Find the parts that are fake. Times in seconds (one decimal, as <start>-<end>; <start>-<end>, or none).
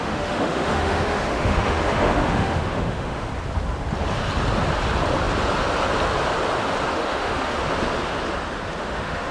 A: 0.0-3.3; 6.9-7.6; 8.8-9.3